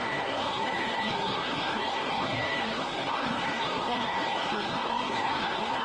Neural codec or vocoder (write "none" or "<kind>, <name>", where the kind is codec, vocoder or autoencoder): codec, SNAC